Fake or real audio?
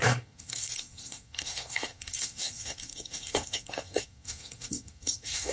fake